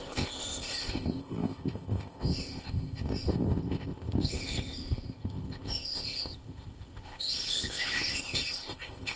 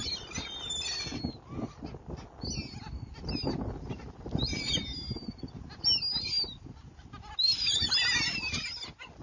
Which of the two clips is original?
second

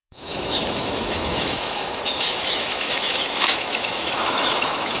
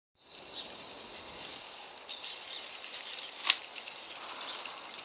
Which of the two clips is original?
second